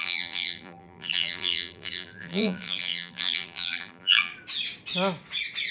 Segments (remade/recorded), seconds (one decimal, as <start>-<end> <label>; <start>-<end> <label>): 0.0-4.3 remade; 4.3-5.7 recorded